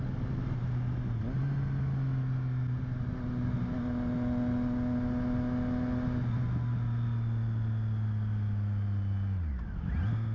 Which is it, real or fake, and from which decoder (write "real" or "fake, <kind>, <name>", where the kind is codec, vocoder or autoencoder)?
real